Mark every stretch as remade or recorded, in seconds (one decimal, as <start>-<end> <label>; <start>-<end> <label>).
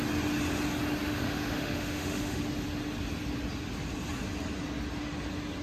0.0-1.1 recorded; 1.1-2.4 remade; 2.4-5.6 recorded